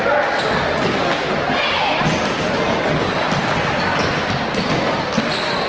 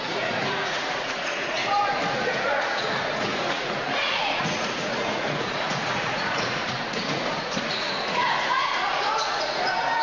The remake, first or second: second